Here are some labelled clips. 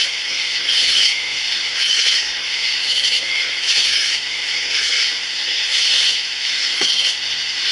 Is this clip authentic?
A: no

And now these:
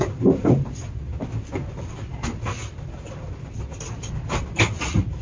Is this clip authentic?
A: yes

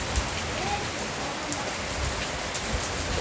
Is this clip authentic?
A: yes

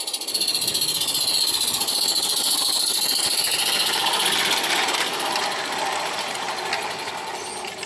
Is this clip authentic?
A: yes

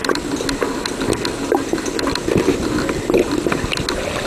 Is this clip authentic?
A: yes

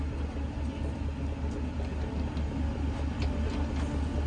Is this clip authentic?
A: yes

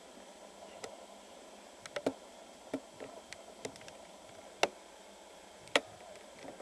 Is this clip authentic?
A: yes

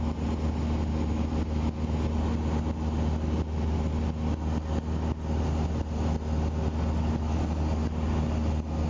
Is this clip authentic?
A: yes